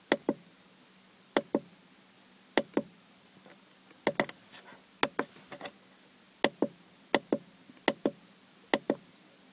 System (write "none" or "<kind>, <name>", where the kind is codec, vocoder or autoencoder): none